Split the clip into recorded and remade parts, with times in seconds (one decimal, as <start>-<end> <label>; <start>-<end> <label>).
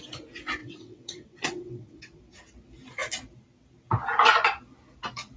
0.0-0.6 recorded; 0.6-2.2 remade; 2.2-5.4 recorded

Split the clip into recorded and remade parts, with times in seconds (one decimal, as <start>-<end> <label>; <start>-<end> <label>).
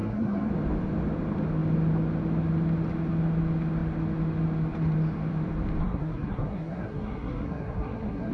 0.0-0.5 remade; 0.5-5.8 recorded; 5.8-8.3 remade